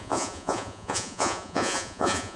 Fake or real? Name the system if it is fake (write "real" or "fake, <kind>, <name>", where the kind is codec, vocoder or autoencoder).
fake, vocoder, Vocos